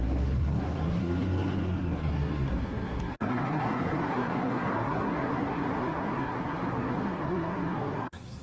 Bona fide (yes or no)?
no